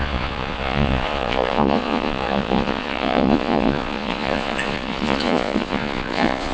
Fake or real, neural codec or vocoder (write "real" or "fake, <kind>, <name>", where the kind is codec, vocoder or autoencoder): fake, vocoder, Vocos